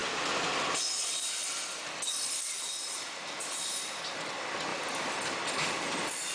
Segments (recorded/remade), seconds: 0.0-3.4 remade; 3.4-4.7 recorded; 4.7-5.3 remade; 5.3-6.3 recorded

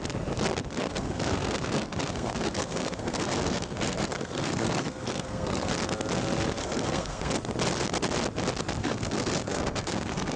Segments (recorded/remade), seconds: 0.0-0.8 recorded; 0.8-5.7 remade; 5.7-6.6 recorded; 6.6-7.3 remade; 7.3-8.8 recorded; 8.8-10.4 remade